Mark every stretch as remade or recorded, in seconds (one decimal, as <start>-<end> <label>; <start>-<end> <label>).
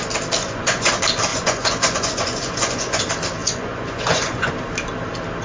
0.0-0.4 recorded; 0.4-0.9 remade; 0.9-1.3 recorded; 1.3-3.0 remade; 3.0-3.4 recorded; 3.4-4.5 remade; 4.5-5.4 recorded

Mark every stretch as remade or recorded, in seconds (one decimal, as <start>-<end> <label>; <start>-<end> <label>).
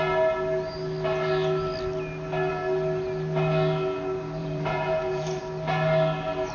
0.0-4.4 recorded; 4.4-5.4 remade; 5.4-6.5 recorded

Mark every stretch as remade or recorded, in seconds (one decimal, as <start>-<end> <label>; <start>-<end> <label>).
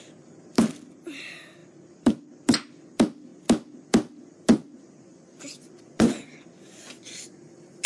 0.0-4.5 recorded; 4.5-7.4 remade; 7.4-7.9 recorded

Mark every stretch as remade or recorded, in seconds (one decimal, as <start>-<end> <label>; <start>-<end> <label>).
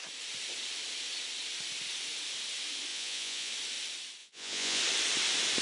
0.0-2.9 recorded; 2.9-3.5 remade; 3.5-4.2 recorded; 4.2-4.8 remade; 4.8-5.6 recorded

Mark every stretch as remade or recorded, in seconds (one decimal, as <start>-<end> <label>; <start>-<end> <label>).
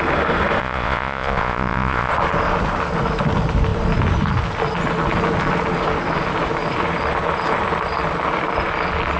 0.0-0.6 recorded; 0.6-2.1 remade; 2.1-9.2 recorded